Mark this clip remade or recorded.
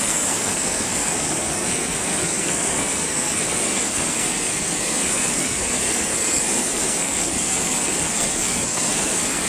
remade